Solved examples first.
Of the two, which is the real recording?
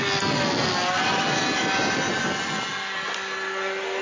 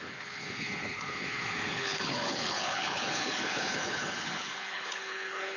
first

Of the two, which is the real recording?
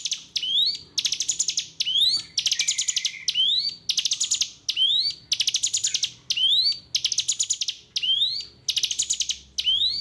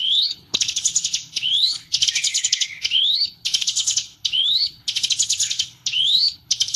first